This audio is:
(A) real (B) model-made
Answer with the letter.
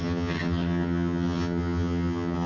B